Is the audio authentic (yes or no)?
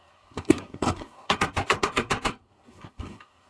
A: no